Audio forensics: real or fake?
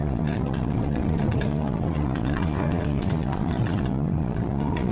fake